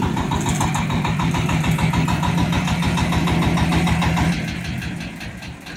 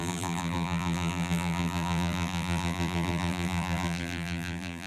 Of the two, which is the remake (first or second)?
second